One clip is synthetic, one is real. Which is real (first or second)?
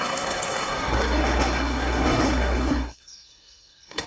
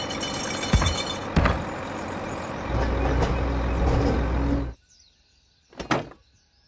second